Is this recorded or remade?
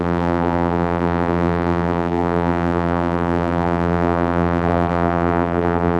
remade